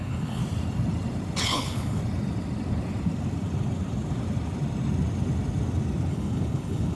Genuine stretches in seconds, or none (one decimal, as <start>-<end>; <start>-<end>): 0.4-1.4; 2.0-6.1

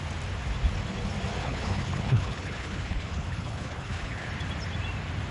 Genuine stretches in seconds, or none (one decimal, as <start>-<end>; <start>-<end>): 0.0-1.4; 4.3-5.3

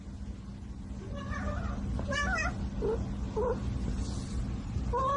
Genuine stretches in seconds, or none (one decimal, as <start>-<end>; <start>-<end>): 0.0-5.2

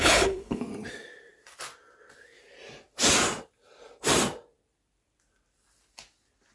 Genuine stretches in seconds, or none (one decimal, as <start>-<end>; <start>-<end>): 0.6-6.5

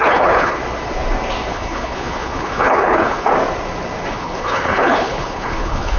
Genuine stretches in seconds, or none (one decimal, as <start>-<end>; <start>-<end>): 0.6-1.5; 3.3-4.1

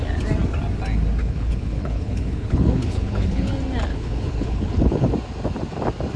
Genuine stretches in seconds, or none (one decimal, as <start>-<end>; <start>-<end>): 0.0-1.2; 3.5-3.9; 5.1-6.2